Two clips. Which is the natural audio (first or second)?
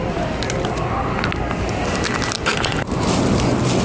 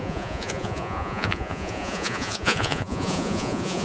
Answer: first